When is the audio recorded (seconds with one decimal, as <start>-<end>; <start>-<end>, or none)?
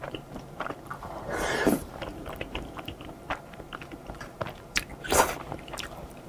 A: 4.9-5.6